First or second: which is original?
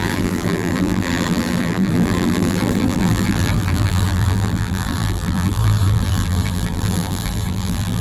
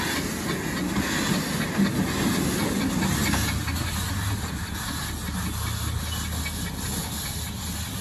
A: second